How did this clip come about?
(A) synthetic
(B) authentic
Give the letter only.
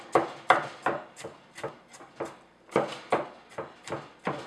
B